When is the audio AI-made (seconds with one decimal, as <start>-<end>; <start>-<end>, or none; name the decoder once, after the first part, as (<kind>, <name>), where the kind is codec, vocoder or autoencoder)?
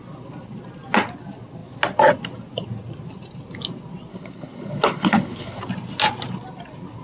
4.1-5.6 (codec, HILCodec)